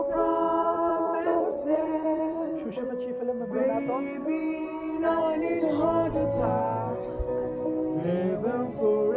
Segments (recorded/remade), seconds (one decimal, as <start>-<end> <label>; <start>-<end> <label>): 0.0-0.6 recorded; 0.6-2.9 remade; 2.9-9.2 recorded